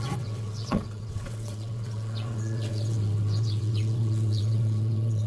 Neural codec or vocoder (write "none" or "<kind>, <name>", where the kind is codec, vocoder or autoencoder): vocoder, WaveNeXt